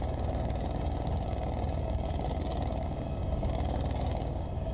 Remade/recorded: remade